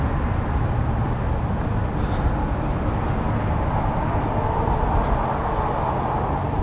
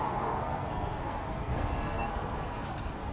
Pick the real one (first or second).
first